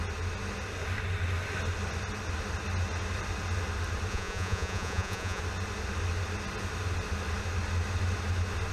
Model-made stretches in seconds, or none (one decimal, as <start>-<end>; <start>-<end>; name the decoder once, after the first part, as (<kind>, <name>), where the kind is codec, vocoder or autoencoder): 4.1-5.4 (vocoder, Vocos)